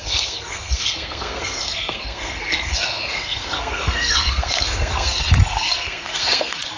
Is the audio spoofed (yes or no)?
yes